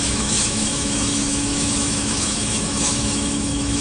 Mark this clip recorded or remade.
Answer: remade